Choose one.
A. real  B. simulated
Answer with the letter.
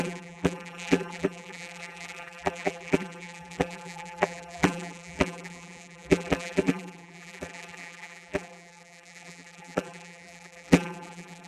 B